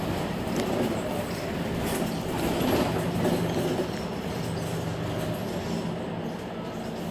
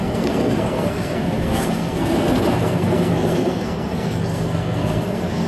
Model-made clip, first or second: second